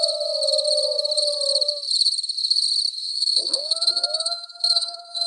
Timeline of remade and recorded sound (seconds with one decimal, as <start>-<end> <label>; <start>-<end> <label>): 0.0-3.1 recorded; 3.1-5.3 remade